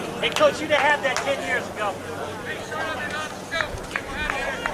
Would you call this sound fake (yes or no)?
no